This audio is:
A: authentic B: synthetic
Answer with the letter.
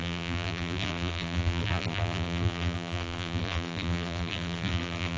B